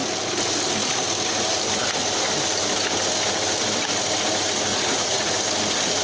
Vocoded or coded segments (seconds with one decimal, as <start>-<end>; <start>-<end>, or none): 4.7-5.3